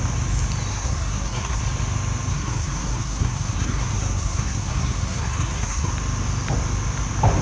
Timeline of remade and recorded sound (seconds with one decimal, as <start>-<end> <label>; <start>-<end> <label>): 0.0-0.7 recorded; 0.7-1.6 remade; 1.6-2.3 recorded; 2.3-5.9 remade; 5.9-7.4 recorded